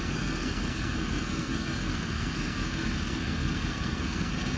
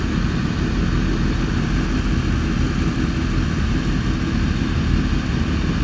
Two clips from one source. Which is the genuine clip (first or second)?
second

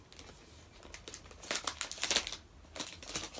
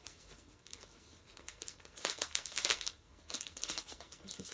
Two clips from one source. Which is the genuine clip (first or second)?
first